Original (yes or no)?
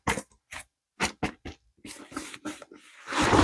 yes